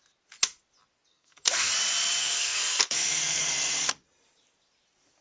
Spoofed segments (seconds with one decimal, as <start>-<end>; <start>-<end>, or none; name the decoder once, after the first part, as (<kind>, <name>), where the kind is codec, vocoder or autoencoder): 1.1-1.7 (codec, SNAC); 2.2-3.5